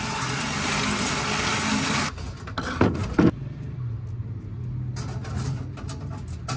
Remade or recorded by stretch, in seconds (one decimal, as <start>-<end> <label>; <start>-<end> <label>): 0.0-6.6 recorded